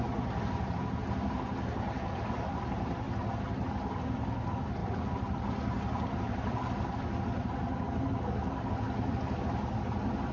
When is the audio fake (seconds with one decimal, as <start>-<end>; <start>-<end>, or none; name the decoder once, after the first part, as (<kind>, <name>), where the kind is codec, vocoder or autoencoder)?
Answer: none

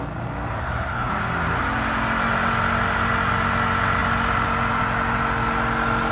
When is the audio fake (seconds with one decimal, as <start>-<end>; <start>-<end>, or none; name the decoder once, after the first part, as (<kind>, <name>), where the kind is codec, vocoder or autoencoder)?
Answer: 0.6-1.1 (codec, SNAC)

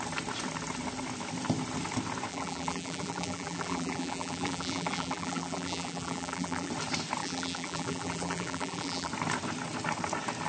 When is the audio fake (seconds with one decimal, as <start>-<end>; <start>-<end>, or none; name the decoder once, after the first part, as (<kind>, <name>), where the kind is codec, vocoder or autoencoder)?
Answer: 2.3-6.7 (vocoder, BigVGAN v2); 7.2-9.1

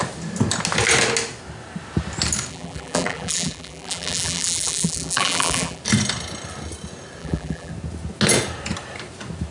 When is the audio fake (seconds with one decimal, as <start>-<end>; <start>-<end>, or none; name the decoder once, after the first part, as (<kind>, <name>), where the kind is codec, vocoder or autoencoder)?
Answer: 2.5-5.8 (vocoder, BigVGAN v2); 7.2-7.7

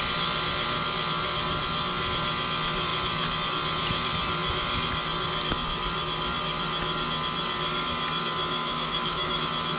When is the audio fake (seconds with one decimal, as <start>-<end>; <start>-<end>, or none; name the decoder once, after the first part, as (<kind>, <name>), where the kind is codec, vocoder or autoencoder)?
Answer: 8.6-9.4 (autoencoder, DAC-VAE)

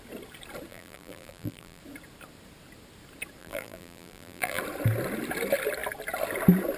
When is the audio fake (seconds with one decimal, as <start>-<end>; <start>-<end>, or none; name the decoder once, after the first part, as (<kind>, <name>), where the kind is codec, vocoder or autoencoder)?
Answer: 0.7-1.8 (vocoder, BigVGAN v2); 3.4-4.6

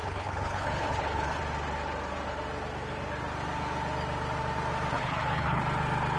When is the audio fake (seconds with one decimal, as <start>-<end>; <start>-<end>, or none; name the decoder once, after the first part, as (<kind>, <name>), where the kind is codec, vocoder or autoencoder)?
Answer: 0.0-1.4 (codec, HILCodec); 4.9-5.6

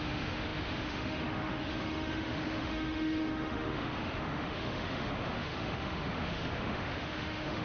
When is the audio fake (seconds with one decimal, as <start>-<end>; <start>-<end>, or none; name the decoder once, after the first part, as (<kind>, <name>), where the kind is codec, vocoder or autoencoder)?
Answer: 0.0-7.6 (autoencoder, DAC-VAE)